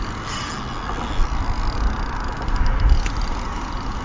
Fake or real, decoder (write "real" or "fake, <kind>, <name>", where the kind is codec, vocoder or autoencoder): real